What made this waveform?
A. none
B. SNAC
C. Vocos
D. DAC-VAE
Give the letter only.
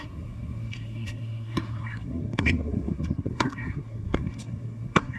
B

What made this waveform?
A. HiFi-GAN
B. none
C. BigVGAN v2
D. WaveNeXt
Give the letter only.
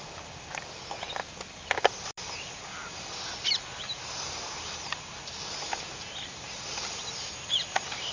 B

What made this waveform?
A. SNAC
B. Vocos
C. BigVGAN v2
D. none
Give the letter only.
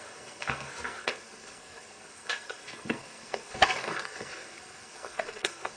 A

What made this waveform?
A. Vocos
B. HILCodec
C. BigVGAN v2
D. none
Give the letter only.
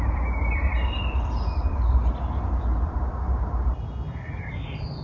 C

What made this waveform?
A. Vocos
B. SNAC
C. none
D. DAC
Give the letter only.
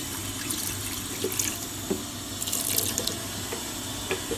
C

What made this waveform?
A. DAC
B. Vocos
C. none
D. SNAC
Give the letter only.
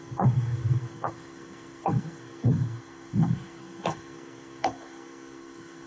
D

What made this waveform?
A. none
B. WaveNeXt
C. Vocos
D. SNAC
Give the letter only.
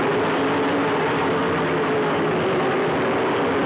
A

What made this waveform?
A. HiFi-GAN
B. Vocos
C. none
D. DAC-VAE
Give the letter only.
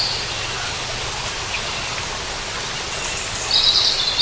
C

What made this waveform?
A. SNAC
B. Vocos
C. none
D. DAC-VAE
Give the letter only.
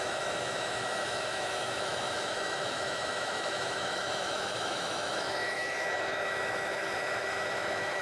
D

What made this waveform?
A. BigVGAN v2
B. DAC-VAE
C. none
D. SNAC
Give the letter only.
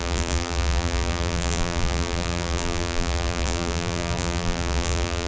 A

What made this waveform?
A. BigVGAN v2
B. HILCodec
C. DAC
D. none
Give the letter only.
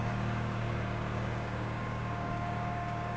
C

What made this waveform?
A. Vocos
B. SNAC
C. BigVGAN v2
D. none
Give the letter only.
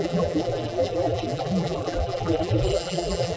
C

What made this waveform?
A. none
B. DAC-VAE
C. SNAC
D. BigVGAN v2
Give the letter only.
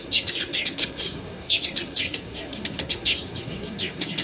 C